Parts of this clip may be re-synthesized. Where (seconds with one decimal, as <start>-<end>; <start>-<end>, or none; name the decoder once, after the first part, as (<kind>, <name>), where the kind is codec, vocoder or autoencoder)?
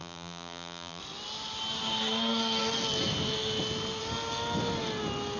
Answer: 0.0-1.0 (vocoder, BigVGAN v2)